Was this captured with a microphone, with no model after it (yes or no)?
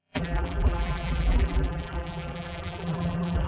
no